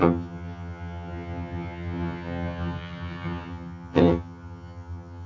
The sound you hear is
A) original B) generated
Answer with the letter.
B